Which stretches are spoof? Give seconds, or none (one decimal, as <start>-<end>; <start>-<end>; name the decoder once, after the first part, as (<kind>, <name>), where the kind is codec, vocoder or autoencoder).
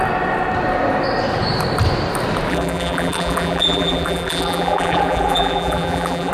2.5-6.3 (vocoder, BigVGAN v2)